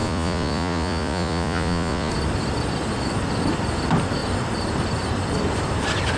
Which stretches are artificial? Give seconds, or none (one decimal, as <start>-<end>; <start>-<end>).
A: 0.0-2.1